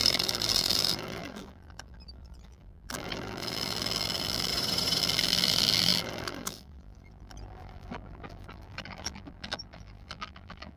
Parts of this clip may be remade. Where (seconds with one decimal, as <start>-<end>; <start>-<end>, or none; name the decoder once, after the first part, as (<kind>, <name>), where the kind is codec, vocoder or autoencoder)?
0.0-4.5 (vocoder, BigVGAN v2); 5.0-10.8